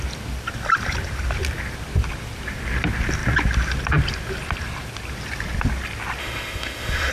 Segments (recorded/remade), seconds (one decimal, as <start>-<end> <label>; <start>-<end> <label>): 0.0-6.2 recorded; 6.2-7.1 remade